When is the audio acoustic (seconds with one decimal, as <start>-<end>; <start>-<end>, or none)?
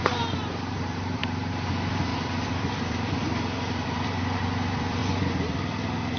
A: 1.2-1.7; 5.0-6.2